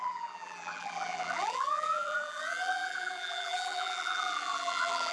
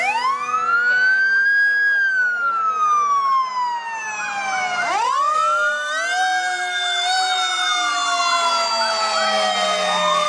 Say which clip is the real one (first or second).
second